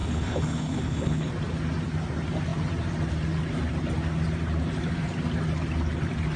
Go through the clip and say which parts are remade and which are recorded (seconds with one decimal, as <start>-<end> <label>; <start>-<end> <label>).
0.0-1.3 remade; 1.3-6.4 recorded